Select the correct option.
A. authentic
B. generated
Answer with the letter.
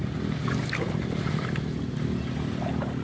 A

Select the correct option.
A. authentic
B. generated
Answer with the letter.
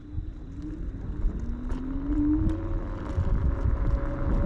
A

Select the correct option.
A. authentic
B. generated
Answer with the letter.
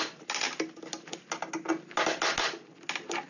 A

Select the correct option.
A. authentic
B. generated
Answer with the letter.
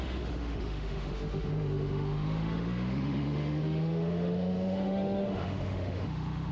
B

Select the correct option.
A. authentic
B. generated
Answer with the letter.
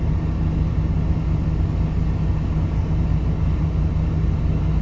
A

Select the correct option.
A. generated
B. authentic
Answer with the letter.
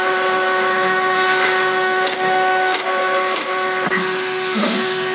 A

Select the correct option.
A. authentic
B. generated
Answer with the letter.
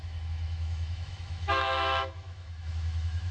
B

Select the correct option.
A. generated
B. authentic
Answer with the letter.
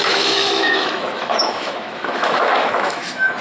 A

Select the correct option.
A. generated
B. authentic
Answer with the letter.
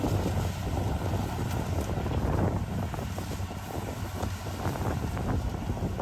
B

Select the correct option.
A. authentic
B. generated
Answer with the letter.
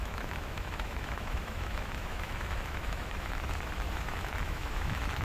B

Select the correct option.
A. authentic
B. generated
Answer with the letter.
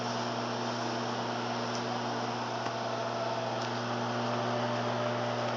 A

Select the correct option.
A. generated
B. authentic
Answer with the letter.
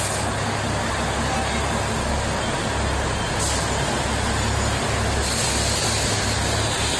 B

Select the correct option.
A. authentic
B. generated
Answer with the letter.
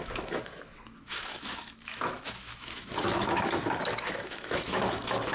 B